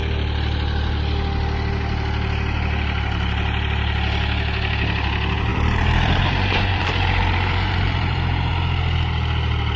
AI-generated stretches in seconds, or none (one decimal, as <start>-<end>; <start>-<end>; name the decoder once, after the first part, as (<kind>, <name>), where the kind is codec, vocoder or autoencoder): 5.5-8.5 (vocoder, BigVGAN v2)

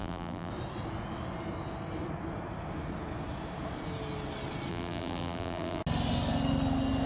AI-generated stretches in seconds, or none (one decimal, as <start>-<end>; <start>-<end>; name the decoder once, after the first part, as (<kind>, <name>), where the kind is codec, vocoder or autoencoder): 0.0-0.5 (vocoder, BigVGAN v2); 4.7-5.8

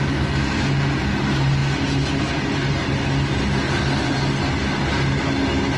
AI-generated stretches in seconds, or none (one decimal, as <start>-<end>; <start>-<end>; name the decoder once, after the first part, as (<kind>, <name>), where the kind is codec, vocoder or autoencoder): none

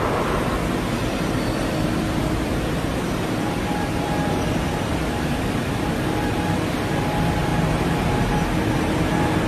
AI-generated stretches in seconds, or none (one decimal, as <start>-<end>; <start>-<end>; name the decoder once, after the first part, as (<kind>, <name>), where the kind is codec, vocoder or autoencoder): 0.0-7.5 (vocoder, BigVGAN v2)

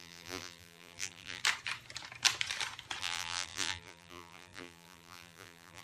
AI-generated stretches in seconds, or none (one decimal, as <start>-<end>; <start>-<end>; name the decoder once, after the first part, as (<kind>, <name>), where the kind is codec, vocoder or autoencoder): 0.0-1.4 (vocoder, BigVGAN v2); 3.0-5.8

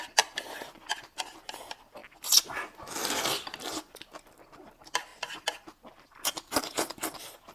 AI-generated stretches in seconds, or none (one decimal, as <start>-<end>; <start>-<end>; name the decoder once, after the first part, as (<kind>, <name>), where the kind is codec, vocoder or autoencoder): 0.0-5.1 (vocoder, BigVGAN v2); 5.9-7.5

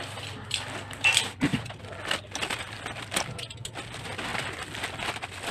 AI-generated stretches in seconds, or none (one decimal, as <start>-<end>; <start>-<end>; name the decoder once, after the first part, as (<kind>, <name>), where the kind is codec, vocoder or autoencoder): none